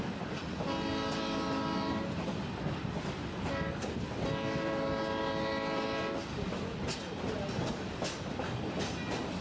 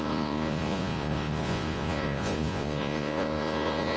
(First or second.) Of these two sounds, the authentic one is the first